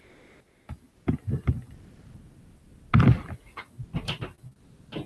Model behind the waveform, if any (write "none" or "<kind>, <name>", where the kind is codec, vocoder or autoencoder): none